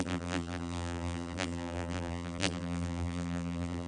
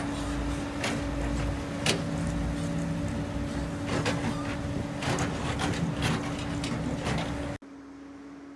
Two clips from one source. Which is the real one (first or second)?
second